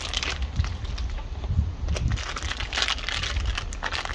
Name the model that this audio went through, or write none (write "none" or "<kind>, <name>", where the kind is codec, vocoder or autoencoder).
none